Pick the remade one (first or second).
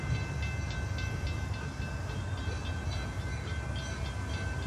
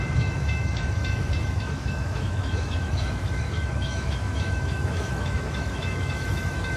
second